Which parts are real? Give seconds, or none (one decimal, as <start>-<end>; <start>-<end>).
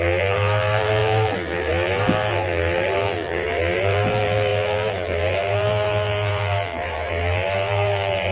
none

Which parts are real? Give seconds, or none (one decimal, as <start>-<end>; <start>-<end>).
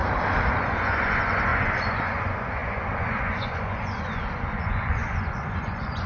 0.0-0.6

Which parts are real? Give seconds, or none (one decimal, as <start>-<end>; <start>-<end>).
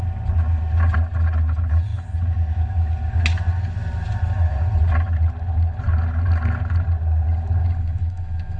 0.0-7.6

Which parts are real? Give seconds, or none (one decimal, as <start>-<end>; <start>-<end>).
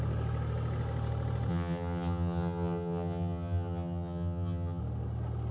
0.0-1.5; 4.8-5.5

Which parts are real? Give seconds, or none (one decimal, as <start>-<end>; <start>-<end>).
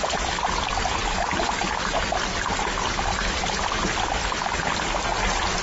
0.0-5.6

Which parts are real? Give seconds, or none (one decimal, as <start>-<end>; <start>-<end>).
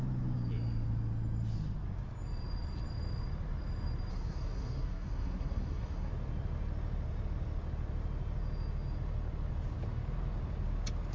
0.0-4.1; 6.1-11.1